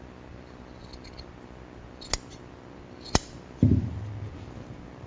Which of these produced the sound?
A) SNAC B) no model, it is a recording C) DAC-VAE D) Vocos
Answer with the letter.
B